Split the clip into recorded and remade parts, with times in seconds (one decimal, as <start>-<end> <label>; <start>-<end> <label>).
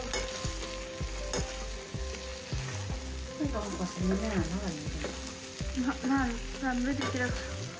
0.0-7.8 recorded